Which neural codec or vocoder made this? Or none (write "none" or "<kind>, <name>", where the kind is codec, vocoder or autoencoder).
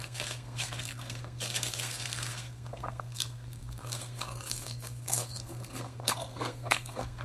codec, SNAC